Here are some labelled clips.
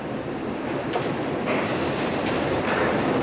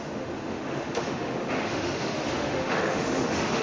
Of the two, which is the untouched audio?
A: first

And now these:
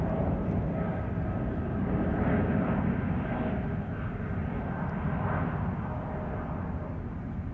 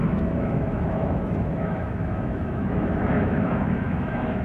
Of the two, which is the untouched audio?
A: first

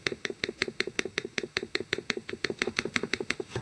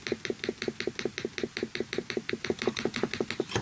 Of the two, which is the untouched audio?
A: second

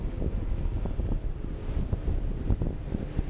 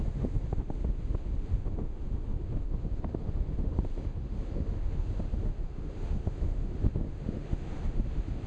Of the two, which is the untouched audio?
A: first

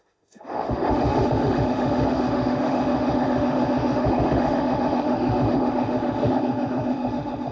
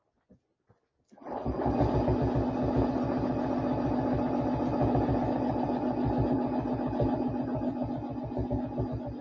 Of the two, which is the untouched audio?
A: second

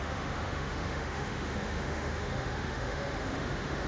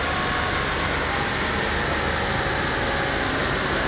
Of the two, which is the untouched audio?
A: second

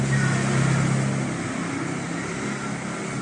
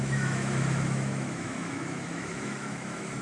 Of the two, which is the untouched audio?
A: first